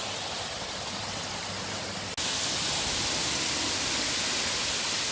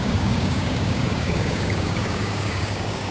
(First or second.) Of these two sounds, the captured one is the first